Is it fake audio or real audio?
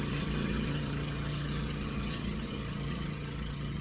fake